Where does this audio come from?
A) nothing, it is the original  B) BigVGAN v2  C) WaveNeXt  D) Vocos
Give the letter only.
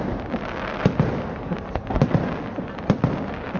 A